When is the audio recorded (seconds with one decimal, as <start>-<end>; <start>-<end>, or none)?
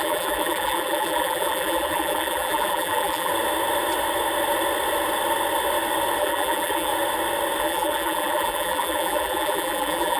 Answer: 3.3-6.2; 6.9-7.6